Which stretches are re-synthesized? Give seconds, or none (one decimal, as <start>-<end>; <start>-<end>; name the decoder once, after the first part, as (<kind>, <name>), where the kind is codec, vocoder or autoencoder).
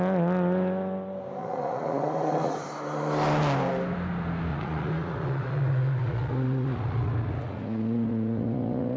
1.4-2.5 (vocoder, Vocos); 4.5-9.0